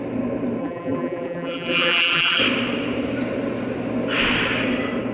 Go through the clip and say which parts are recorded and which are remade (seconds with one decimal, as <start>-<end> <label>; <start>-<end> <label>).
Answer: 0.0-0.6 recorded; 0.6-2.4 remade; 2.4-5.1 recorded